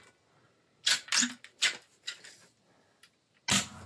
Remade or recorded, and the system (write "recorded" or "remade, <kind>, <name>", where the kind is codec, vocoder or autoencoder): recorded